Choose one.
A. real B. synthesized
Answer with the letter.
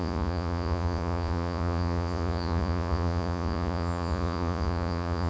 B